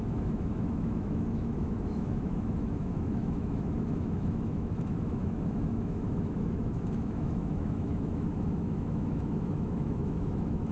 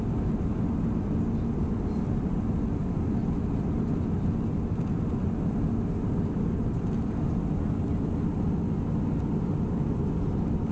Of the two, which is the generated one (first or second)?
first